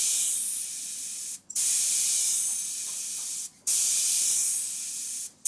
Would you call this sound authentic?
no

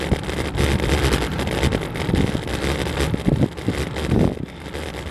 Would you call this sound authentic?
yes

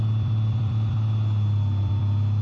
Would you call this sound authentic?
no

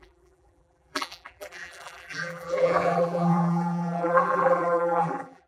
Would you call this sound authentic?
no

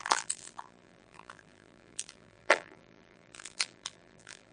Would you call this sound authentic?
no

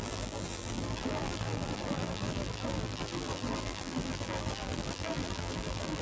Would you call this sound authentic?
no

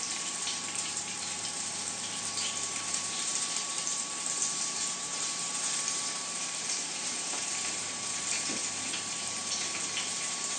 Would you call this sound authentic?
no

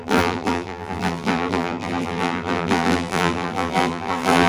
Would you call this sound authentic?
no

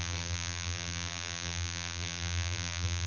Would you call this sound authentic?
no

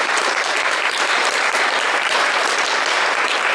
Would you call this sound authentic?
no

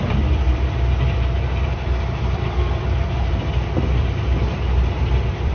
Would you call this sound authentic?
no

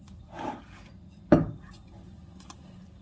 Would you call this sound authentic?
yes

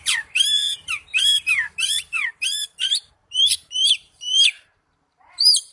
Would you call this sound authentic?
no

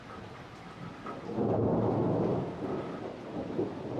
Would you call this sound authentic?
yes